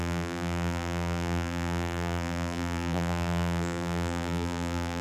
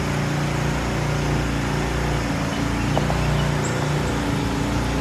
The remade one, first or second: first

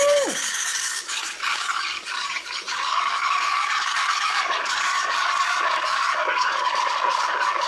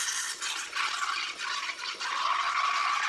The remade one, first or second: first